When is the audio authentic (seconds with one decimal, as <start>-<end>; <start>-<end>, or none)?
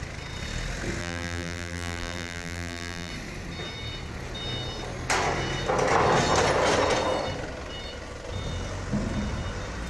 0.0-1.0; 3.1-9.9